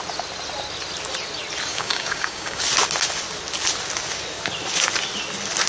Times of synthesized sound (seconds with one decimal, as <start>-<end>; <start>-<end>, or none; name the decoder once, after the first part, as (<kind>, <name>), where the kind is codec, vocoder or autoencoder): 1.7-2.6 (codec, DAC)